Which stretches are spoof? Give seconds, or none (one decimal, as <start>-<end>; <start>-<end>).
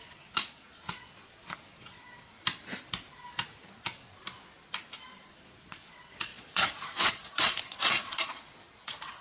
0.0-2.1; 5.6-9.2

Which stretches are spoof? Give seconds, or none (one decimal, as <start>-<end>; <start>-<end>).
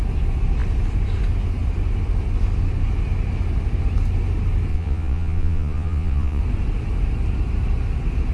4.7-6.4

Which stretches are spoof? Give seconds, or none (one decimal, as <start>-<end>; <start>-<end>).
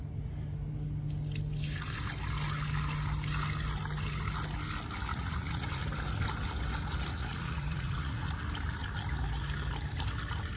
5.1-5.8; 7.1-8.3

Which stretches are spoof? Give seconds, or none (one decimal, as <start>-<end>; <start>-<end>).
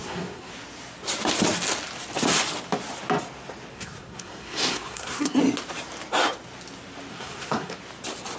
0.0-0.5; 3.7-5.4; 7.1-7.8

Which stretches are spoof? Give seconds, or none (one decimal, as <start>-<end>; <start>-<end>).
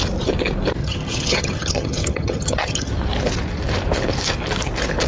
0.8-2.9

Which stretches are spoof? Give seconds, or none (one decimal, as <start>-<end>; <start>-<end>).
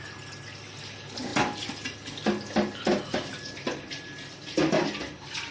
none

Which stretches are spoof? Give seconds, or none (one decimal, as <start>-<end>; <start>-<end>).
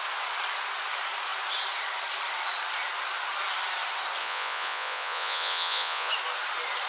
4.2-6.1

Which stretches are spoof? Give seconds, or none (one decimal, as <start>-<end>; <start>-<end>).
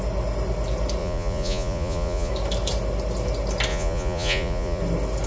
1.0-2.3; 3.7-4.8